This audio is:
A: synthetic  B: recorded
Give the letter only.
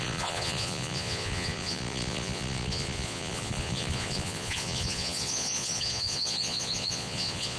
A